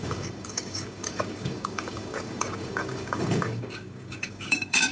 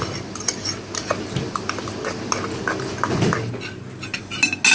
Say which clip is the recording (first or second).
second